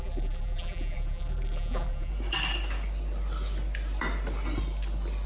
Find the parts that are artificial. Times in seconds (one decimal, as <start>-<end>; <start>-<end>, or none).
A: 0.0-2.1

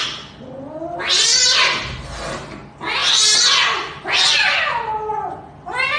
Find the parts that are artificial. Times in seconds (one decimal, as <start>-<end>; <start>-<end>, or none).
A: none

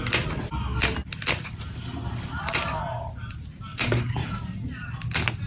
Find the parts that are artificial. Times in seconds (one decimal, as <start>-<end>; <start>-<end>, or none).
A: 3.7-4.3